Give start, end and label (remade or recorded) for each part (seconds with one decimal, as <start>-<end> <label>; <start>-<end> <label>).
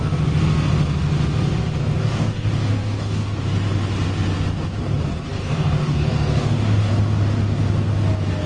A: 0.0-1.8 recorded; 1.8-3.4 remade; 3.4-5.3 recorded; 5.3-6.9 remade; 6.9-8.5 recorded